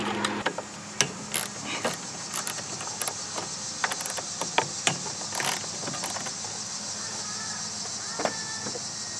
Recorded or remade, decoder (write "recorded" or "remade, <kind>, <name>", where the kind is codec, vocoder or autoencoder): recorded